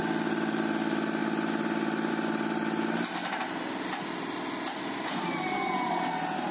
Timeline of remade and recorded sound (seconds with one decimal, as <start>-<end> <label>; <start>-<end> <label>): 0.0-6.5 recorded